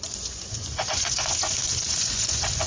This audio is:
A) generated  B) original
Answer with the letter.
A